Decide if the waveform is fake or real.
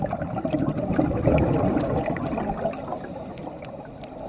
real